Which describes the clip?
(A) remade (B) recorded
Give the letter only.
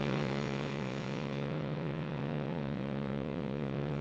A